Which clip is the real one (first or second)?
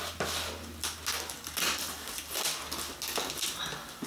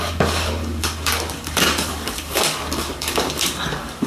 first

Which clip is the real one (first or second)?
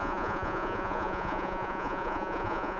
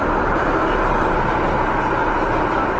second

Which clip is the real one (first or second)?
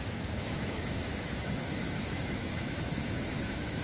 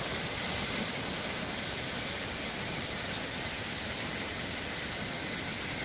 second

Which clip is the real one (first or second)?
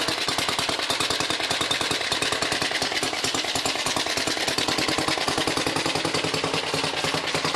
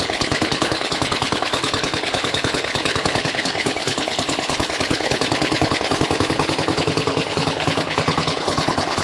first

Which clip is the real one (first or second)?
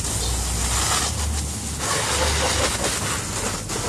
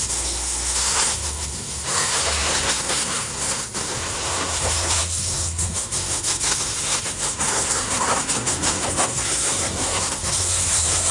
first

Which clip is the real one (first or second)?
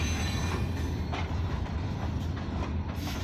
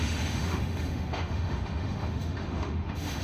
first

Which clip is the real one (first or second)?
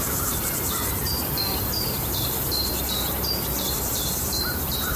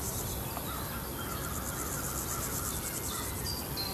second